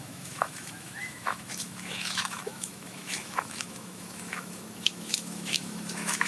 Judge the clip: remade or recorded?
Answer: remade